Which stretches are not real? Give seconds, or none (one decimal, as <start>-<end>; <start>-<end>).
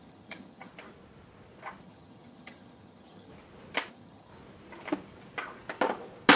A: 0.0-0.7; 1.8-3.3; 3.9-4.3